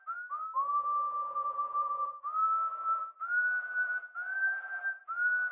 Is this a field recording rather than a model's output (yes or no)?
yes